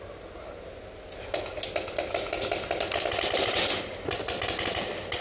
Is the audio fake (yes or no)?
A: no